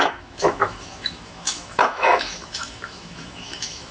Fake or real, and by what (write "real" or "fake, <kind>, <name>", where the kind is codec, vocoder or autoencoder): fake, autoencoder, DAC-VAE